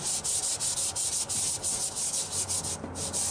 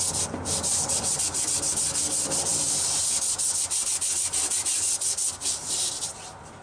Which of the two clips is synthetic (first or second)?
second